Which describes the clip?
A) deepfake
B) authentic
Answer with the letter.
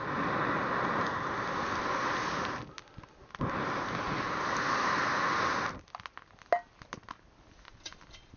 B